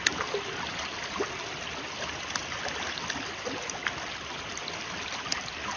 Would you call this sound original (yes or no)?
yes